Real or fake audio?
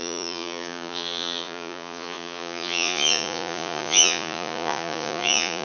fake